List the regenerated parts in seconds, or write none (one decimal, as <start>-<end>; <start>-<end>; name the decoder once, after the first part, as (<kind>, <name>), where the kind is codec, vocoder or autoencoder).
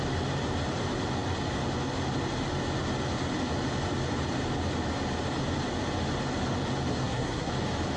6.9-7.5 (codec, SNAC)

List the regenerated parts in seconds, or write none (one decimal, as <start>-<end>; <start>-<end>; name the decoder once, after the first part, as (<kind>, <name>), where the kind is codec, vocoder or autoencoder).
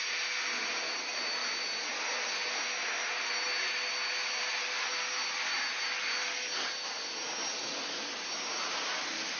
none